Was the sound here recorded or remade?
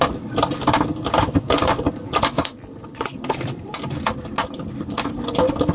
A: recorded